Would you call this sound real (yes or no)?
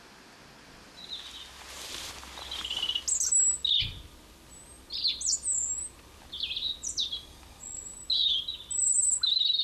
yes